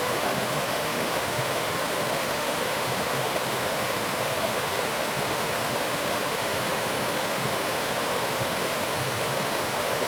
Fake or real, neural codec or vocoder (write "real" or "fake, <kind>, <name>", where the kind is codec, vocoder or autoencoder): fake, autoencoder, DAC-VAE